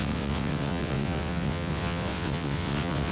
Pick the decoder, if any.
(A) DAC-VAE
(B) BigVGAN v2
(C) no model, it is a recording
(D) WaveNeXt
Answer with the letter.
D